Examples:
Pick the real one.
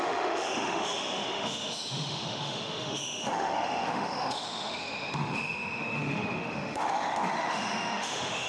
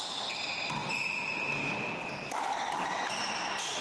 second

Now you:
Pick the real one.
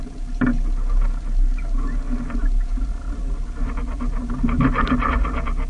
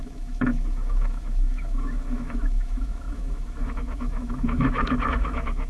first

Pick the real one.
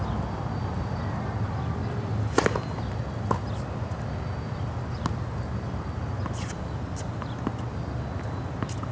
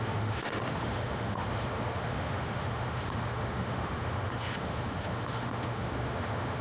first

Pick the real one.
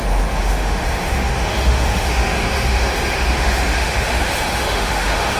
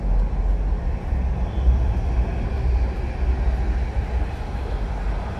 second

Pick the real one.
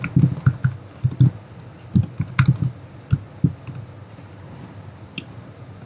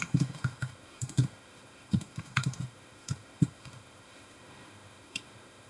first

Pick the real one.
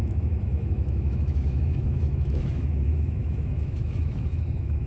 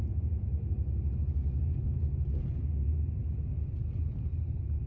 second